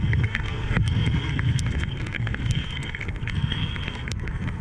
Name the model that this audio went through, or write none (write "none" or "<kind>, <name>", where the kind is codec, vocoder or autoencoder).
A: codec, SNAC